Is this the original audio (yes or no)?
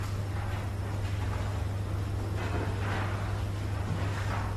yes